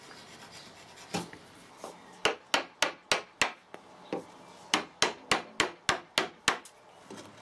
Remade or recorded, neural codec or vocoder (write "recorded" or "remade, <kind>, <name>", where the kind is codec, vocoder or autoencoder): recorded